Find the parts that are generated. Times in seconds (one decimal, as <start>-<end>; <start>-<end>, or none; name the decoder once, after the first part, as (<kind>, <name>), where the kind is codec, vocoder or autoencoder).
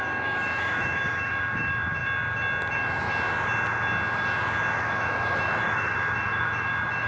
0.0-2.0 (autoencoder, DAC-VAE); 2.7-3.1; 4.7-7.1